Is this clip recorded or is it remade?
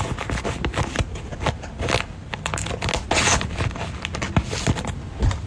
recorded